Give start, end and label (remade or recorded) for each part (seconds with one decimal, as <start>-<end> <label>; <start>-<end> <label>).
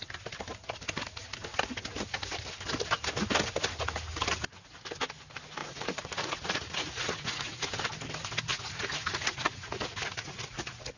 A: 0.0-5.6 recorded; 5.6-7.6 remade; 7.6-8.5 recorded; 8.5-11.0 remade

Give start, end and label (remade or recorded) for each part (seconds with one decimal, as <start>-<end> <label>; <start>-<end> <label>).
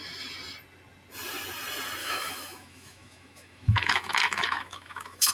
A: 0.0-2.0 recorded; 2.0-5.3 remade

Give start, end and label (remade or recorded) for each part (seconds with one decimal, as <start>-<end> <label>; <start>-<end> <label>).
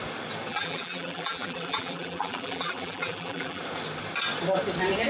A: 0.0-0.5 recorded; 0.5-3.6 remade; 3.6-5.1 recorded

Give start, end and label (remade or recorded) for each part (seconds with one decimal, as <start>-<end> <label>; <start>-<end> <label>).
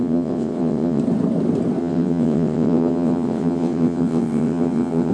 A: 0.0-1.0 remade; 1.0-1.8 recorded; 1.8-5.1 remade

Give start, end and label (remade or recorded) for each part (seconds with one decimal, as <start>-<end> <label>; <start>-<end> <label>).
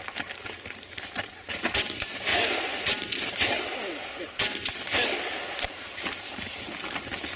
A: 0.0-2.3 recorded; 2.3-6.2 remade; 6.2-7.4 recorded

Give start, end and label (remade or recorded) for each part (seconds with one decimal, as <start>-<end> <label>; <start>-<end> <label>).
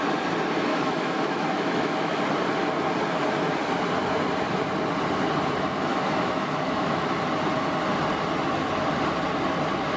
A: 0.0-0.7 recorded; 0.7-2.2 remade; 2.2-5.9 recorded; 5.9-7.1 remade; 7.1-10.0 recorded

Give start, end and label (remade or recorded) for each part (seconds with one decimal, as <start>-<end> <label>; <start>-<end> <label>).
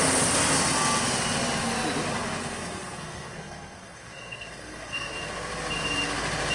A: 0.0-2.4 recorded; 2.4-5.1 remade; 5.1-6.5 recorded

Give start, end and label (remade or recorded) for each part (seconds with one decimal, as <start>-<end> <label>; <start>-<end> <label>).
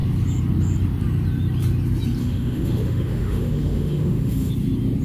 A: 0.0-2.2 recorded; 2.2-4.5 remade; 4.5-5.0 recorded